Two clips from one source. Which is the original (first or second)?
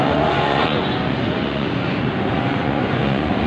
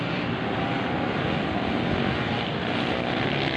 second